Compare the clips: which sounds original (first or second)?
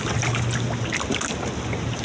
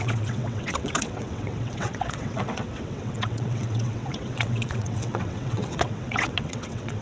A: first